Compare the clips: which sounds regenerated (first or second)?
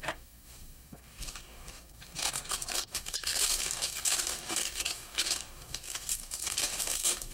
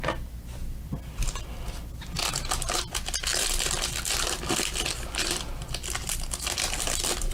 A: first